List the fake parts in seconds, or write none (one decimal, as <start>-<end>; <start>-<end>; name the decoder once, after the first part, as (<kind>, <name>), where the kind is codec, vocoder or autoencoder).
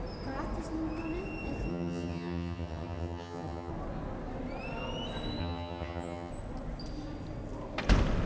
1.7-3.7 (vocoder, HiFi-GAN); 5.4-6.3